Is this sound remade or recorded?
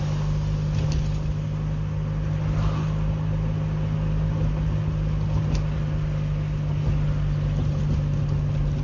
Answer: recorded